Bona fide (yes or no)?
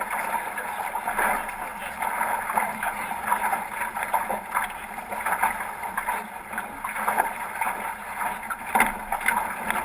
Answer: yes